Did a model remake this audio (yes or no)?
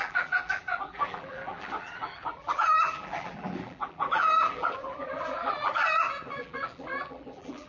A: yes